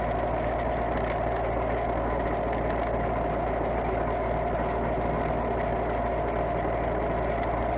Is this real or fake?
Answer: real